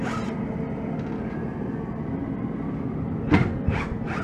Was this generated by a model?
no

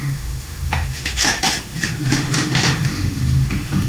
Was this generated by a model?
yes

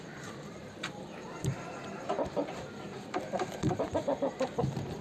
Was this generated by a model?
yes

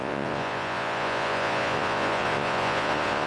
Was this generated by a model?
yes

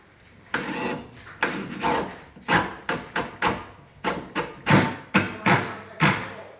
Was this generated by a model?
no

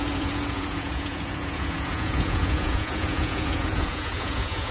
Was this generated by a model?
yes